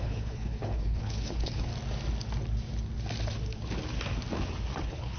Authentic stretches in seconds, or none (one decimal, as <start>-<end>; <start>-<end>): 1.7-4.8